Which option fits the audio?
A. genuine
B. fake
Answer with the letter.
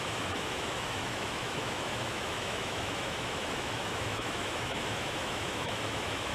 B